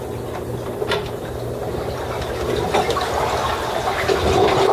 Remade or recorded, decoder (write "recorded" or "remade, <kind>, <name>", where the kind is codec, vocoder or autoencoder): recorded